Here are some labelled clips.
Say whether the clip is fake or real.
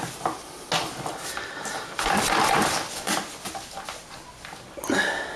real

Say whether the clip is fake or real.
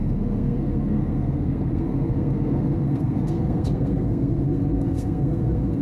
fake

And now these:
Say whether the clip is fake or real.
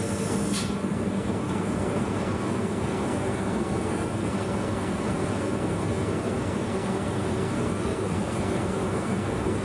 fake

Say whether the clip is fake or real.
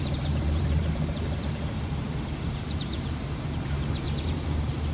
fake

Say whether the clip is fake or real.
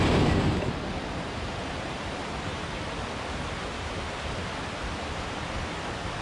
real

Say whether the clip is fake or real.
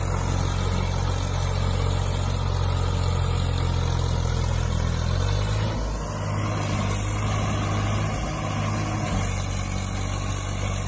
real